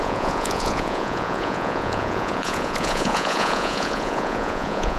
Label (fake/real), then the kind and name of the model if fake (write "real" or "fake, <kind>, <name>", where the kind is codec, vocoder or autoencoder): fake, vocoder, Vocos